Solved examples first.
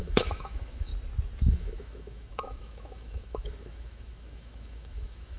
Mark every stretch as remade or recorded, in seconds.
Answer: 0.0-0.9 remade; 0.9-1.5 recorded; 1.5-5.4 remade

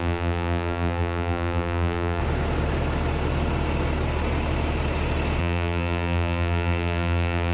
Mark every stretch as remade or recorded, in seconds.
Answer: 0.0-2.2 remade; 2.2-5.4 recorded; 5.4-7.5 remade

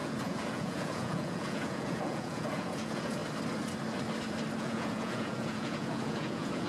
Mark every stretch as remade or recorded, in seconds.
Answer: 0.0-3.2 remade; 3.2-4.6 recorded; 4.6-6.7 remade